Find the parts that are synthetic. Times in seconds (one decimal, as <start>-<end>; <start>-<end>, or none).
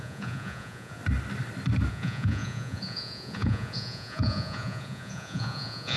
0.0-1.0; 1.9-6.0